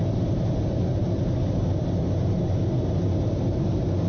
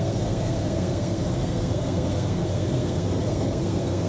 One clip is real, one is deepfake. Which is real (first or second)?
first